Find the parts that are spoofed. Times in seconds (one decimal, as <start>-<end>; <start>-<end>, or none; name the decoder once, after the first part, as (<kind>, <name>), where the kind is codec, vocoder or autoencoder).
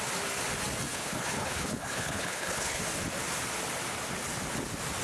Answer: 0.9-2.8 (codec, HILCodec)